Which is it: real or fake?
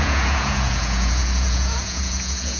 fake